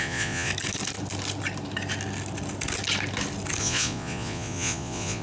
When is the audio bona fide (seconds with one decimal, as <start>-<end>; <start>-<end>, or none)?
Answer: 0.5-3.6